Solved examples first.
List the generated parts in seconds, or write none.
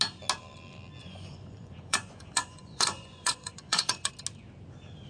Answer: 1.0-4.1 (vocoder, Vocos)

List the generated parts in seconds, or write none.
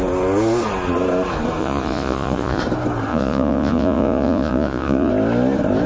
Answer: 1.6-2.6 (vocoder, Vocos); 3.1-5.1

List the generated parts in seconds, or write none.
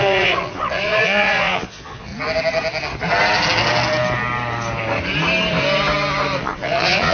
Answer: 0.0-2.1 (vocoder, Vocos); 6.4-7.1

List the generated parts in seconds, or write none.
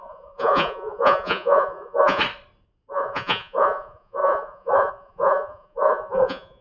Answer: 0.0-2.2 (vocoder, Vocos); 2.9-6.6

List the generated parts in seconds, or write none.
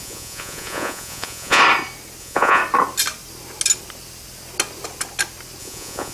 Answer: 0.0-1.6 (vocoder, Vocos); 2.2-2.6; 5.6-6.1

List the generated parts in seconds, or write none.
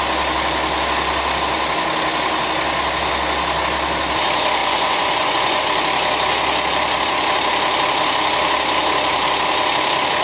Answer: 4.6-5.6 (vocoder, Vocos)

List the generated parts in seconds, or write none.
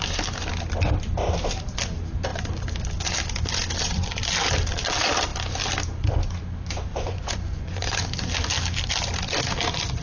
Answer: 6.9-8.0 (vocoder, Vocos)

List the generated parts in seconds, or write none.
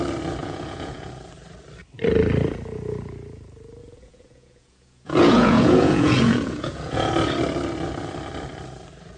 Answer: 0.4-1.1 (vocoder, Vocos); 3.8-7.1